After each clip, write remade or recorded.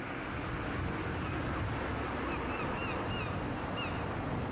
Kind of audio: recorded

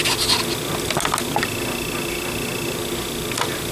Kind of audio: recorded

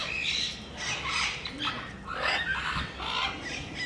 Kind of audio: recorded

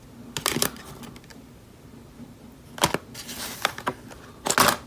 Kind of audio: recorded